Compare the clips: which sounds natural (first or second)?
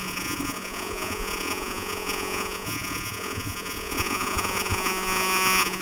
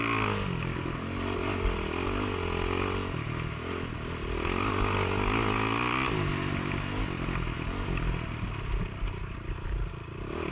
second